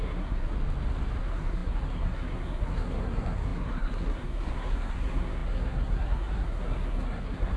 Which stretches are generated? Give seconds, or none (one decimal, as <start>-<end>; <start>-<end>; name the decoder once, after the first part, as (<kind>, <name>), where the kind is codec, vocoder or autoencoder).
0.0-0.5 (codec, SNAC); 1.2-7.6